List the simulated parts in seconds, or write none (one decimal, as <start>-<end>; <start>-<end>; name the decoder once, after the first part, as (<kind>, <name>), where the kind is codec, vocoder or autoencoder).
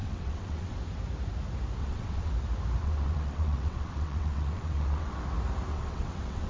0.0-0.8 (vocoder, WaveNeXt); 1.8-2.3; 2.8-5.2; 5.7-6.5